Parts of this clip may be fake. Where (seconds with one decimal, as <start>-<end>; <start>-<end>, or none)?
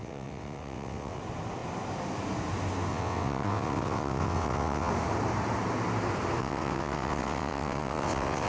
0.0-1.2; 2.9-4.9; 6.4-8.5